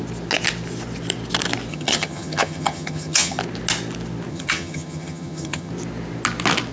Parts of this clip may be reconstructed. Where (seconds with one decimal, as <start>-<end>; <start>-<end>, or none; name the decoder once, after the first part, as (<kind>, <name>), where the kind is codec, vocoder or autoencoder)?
1.7-3.4 (vocoder, HiFi-GAN); 4.3-5.7